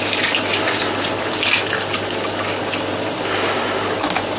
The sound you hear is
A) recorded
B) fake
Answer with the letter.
A